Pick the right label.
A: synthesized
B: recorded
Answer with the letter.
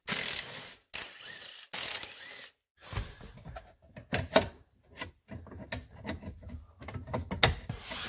B